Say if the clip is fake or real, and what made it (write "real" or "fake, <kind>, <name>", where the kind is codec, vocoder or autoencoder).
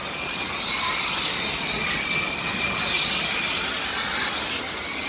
real